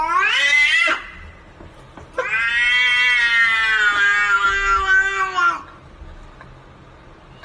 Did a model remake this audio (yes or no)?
no